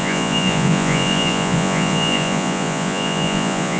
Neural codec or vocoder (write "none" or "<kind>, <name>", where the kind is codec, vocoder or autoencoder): vocoder, Vocos